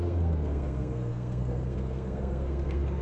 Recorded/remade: remade